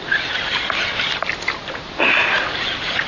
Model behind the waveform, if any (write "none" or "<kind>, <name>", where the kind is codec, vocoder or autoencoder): none